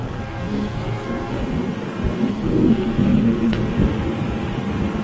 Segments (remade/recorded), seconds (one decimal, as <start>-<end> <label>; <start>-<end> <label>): 0.0-1.4 remade; 1.4-2.3 recorded; 2.3-3.7 remade; 3.7-5.0 recorded